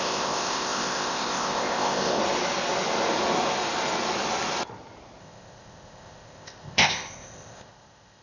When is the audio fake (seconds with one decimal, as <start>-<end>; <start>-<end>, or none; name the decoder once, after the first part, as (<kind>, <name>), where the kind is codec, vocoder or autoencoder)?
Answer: 0.0-2.2 (codec, ZipCodec); 5.2-8.2